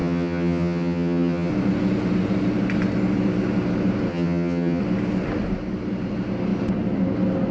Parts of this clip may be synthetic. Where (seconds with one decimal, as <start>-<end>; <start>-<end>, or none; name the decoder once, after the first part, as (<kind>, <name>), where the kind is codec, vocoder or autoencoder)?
0.0-1.5 (vocoder, HiFi-GAN); 4.1-4.8